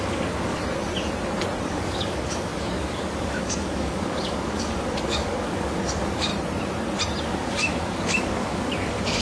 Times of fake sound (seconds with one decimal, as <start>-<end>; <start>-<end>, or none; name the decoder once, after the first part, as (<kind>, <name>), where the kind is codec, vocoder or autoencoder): 0.0-0.6 (codec, DAC); 1.7-6.3; 7.2-9.2